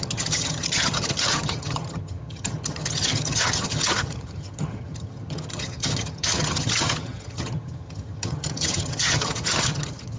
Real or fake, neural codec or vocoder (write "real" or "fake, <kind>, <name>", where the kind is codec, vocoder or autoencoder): fake, vocoder, HiFi-GAN